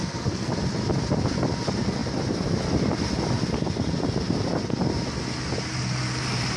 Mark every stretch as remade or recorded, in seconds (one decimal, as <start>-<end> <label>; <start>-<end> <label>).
0.0-0.5 remade; 0.5-6.6 recorded